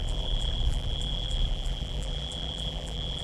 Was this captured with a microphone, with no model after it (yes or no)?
no